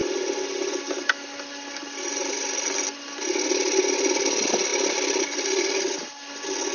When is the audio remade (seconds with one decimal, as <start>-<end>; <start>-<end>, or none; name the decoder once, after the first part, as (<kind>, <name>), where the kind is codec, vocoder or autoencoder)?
none